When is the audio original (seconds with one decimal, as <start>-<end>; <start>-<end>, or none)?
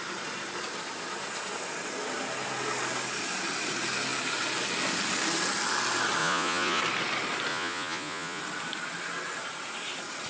0.0-6.2; 6.8-7.5; 8.4-10.3